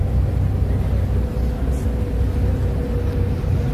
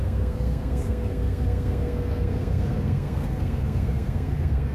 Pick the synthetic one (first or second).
second